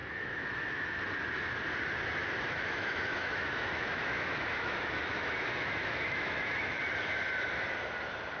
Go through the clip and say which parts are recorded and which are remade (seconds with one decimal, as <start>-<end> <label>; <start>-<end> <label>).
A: 0.0-1.0 remade; 1.0-2.2 recorded; 2.2-6.8 remade; 6.8-8.4 recorded